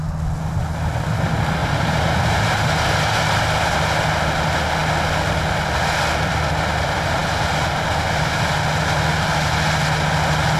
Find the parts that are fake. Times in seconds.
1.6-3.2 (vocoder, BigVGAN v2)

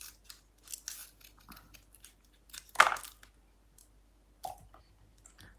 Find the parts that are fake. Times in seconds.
none

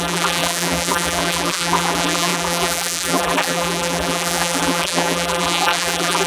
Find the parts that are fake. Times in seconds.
0.0-6.3 (vocoder, BigVGAN v2)

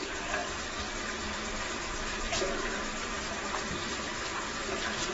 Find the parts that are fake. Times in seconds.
none